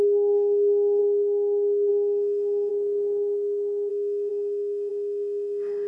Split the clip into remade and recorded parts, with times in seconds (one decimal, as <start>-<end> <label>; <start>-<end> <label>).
0.0-1.0 remade; 1.0-1.9 recorded; 1.9-2.7 remade; 2.7-3.9 recorded; 3.9-5.9 remade